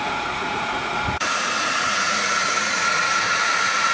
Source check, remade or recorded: remade